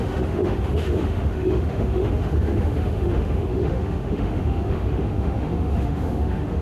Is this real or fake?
fake